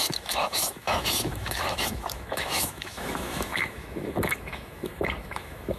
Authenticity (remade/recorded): remade